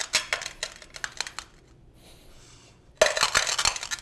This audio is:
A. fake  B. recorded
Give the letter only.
B